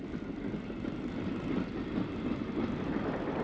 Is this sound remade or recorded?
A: recorded